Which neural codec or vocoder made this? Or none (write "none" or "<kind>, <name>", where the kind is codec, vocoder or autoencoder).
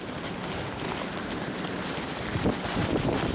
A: none